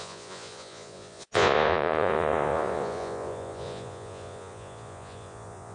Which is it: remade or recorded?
remade